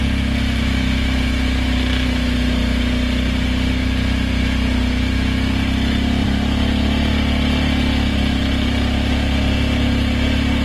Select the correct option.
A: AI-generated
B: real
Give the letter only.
B